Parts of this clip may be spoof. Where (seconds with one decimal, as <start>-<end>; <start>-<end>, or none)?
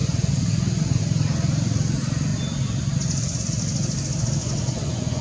0.0-1.0; 4.4-5.2